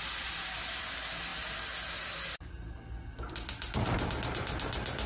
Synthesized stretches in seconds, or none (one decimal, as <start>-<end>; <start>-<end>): none